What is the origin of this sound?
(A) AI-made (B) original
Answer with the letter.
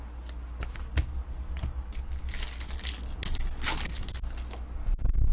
B